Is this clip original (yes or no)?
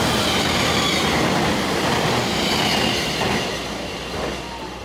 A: yes